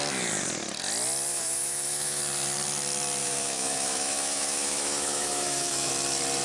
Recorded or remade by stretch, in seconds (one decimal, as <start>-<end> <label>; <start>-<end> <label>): 0.0-1.3 recorded; 1.3-2.2 remade; 2.2-3.2 recorded; 3.2-5.9 remade; 5.9-6.4 recorded